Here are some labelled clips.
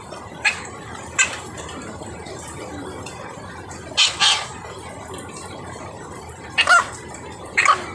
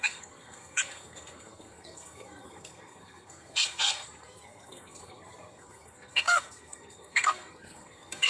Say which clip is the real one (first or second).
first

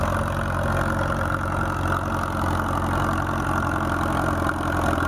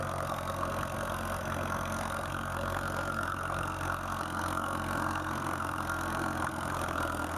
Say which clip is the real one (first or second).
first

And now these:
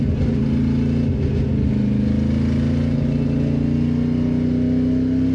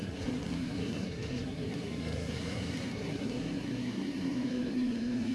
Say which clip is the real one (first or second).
first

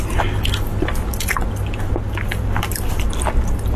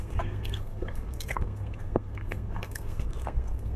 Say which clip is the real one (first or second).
first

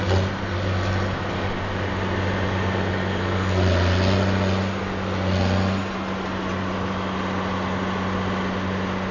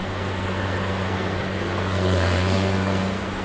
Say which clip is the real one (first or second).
first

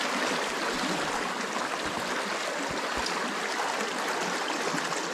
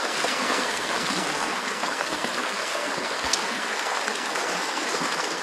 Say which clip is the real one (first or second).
first